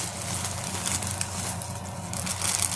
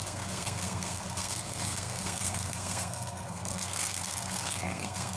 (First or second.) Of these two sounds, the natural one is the first